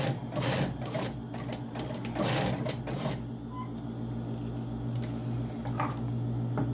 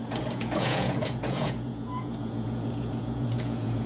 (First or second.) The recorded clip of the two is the first